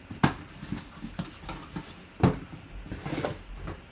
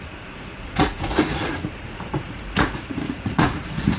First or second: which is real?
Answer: first